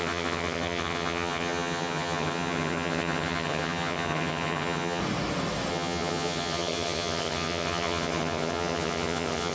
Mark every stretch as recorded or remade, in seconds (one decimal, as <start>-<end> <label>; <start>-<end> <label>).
0.0-5.0 remade; 5.0-5.7 recorded; 5.7-9.5 remade